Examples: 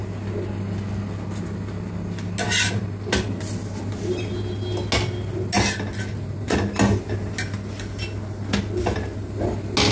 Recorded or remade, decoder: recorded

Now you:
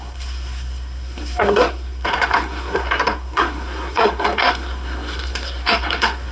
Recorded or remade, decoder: remade, codec, SNAC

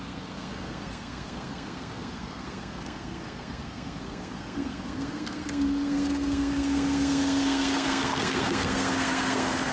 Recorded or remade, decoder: remade, codec, SNAC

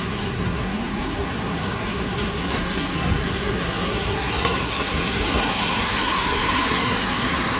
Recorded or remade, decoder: remade, codec, SNAC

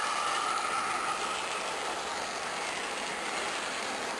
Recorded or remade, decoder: recorded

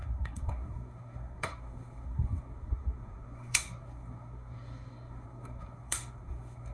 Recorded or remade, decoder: remade, codec, SNAC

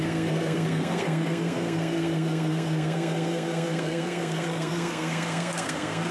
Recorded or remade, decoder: remade, codec, SNAC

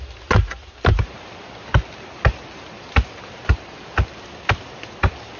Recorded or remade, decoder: recorded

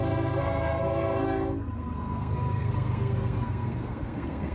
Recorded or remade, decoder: remade, codec, SNAC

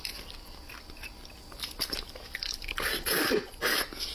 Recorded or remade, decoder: recorded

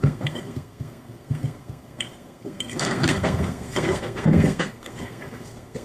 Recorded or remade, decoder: remade, codec, SNAC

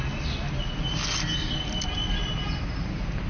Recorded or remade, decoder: recorded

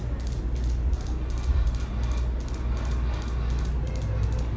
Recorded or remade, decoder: recorded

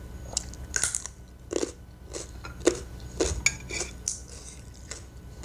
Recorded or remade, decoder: recorded